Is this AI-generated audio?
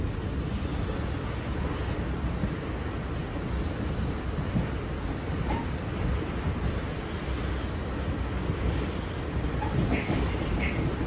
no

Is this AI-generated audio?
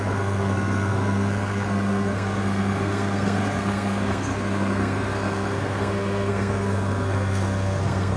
yes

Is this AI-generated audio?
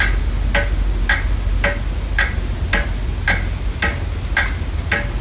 no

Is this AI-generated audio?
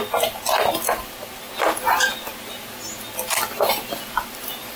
no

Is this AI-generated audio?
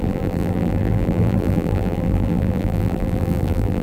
yes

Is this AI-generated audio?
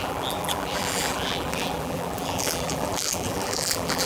yes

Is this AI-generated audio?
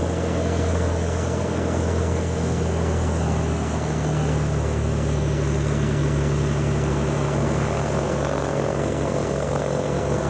yes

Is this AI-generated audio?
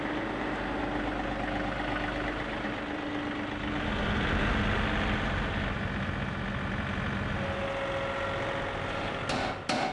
no